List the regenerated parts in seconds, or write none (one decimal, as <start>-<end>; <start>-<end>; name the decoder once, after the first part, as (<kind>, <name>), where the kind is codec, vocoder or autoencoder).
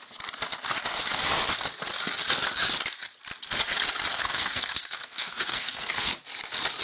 4.1-6.2 (codec, SNAC)